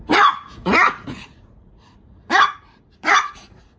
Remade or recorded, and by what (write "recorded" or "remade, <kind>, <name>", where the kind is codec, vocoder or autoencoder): remade, vocoder, Vocos